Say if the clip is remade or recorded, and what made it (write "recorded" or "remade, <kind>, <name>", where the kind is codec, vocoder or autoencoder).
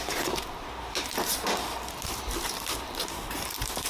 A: remade, vocoder, BigVGAN v2